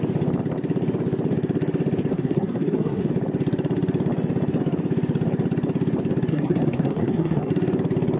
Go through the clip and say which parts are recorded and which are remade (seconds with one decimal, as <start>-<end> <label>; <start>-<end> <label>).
0.0-2.1 recorded; 2.1-3.1 remade; 3.1-6.3 recorded; 6.3-7.5 remade; 7.5-8.2 recorded

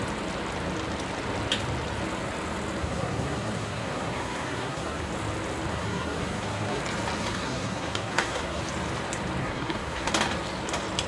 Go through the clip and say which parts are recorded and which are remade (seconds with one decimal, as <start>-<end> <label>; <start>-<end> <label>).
0.0-2.8 recorded; 2.8-5.1 remade; 5.1-5.7 recorded; 5.7-6.8 remade; 6.8-7.2 recorded; 7.2-8.6 remade; 8.6-9.4 recorded; 9.4-10.1 remade; 10.1-11.1 recorded

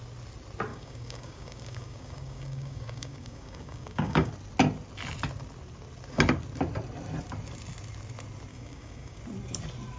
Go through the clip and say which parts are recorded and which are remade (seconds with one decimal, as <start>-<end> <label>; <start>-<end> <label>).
0.0-0.7 recorded; 0.7-4.3 remade; 4.3-8.5 recorded; 8.5-9.2 remade; 9.2-10.0 recorded

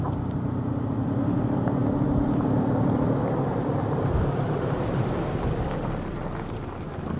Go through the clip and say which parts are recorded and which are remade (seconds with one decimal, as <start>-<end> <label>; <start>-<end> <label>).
0.0-1.8 recorded; 1.8-5.5 remade; 5.5-7.2 recorded

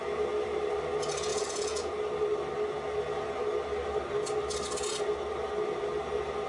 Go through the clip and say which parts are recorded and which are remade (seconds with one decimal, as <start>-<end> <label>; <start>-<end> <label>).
0.0-1.3 recorded; 1.3-1.9 remade; 1.9-6.5 recorded

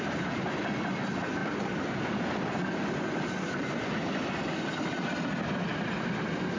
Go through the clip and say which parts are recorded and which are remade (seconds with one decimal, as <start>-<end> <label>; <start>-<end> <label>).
0.0-6.6 recorded

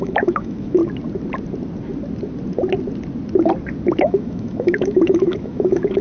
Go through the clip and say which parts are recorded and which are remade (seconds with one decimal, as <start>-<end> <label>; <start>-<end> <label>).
0.0-0.8 remade; 0.8-4.0 recorded; 4.0-6.0 remade

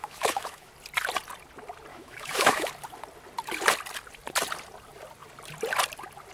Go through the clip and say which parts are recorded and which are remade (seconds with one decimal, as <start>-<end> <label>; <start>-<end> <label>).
0.0-0.7 remade; 0.7-1.9 recorded; 1.9-2.7 remade; 2.7-6.3 recorded